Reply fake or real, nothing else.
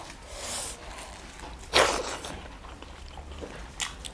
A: real